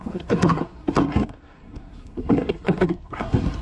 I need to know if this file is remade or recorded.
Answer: remade